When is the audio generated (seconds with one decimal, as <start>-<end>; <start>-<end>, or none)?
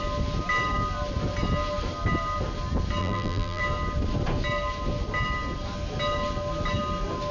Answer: 3.0-3.6